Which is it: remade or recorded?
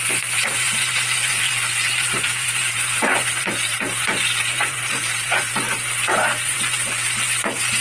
remade